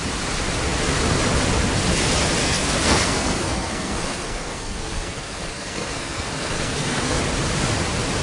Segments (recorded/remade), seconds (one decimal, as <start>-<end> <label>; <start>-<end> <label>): 0.0-2.4 recorded; 2.4-7.2 remade; 7.2-8.2 recorded